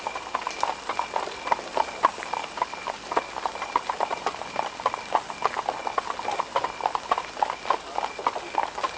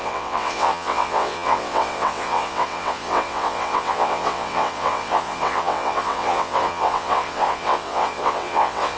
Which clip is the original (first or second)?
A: first